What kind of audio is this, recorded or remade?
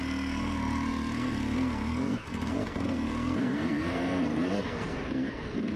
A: remade